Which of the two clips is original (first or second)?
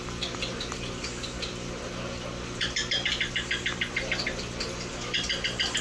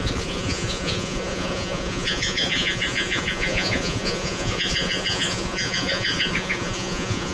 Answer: first